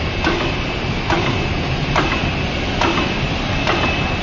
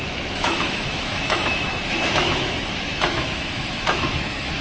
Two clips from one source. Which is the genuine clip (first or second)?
first